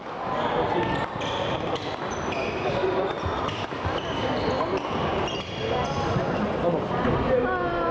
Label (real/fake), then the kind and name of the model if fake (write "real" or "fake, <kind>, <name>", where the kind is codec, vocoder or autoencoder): real